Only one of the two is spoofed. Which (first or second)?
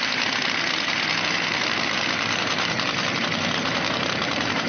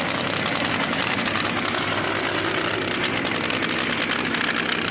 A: first